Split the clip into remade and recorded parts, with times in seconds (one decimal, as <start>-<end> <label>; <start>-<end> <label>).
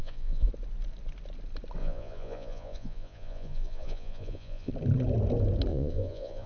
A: 0.0-0.5 remade; 0.5-1.8 recorded; 1.8-4.7 remade; 4.7-5.7 recorded; 5.7-6.5 remade